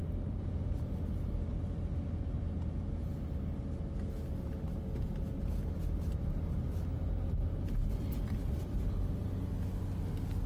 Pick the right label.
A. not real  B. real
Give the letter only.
B